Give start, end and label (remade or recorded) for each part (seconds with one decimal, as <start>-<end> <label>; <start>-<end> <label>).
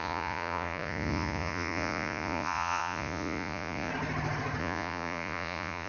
0.0-3.9 remade; 3.9-4.6 recorded; 4.6-5.9 remade